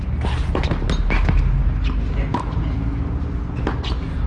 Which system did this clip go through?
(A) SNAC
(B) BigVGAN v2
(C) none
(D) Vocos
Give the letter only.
C